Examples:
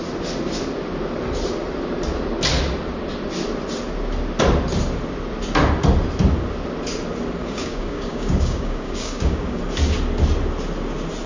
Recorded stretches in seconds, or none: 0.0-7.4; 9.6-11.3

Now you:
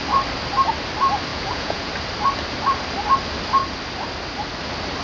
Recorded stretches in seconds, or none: 0.0-1.3; 1.9-5.0

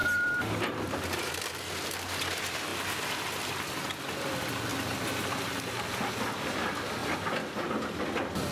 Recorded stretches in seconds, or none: 1.3-4.7; 5.6-8.5